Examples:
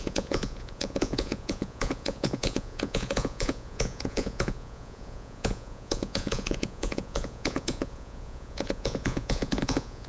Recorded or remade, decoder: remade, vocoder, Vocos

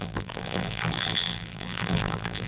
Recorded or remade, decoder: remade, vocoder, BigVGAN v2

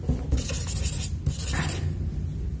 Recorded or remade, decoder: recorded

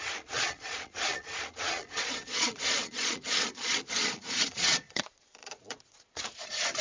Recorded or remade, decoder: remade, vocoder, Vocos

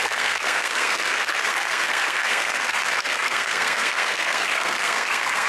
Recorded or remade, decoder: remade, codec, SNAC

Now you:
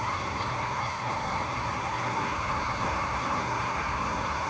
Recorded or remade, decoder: remade, codec, SNAC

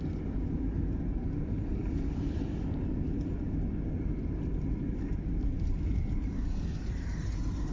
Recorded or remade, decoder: remade, vocoder, BigVGAN v2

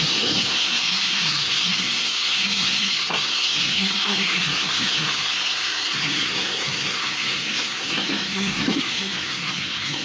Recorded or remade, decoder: remade, codec, SNAC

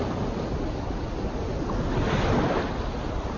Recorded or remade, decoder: recorded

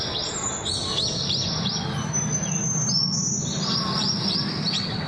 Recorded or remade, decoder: recorded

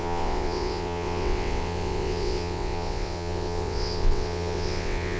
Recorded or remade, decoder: remade, vocoder, WaveNeXt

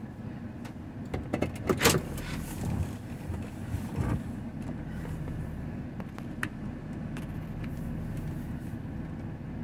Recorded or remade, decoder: recorded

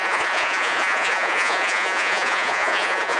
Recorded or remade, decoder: remade, vocoder, Vocos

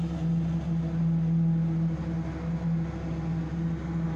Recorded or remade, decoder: recorded